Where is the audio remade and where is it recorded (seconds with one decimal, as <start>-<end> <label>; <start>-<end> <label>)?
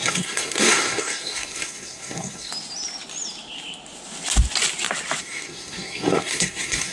0.0-2.5 remade; 2.5-5.2 recorded; 5.2-6.9 remade